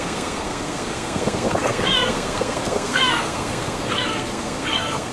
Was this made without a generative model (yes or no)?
no